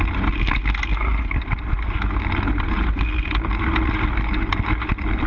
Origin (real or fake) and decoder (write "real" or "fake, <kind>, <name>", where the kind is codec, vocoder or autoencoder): real